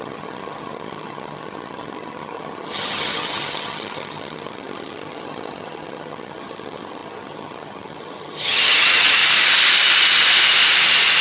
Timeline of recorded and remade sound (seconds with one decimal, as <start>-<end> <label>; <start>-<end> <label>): 0.0-9.2 remade; 9.2-11.2 recorded